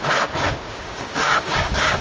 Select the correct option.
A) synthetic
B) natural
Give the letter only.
A